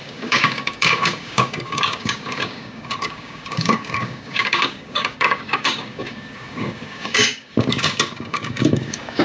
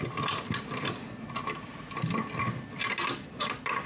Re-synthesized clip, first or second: first